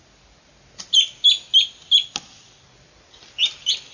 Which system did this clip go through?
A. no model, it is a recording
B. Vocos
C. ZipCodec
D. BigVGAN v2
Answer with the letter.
A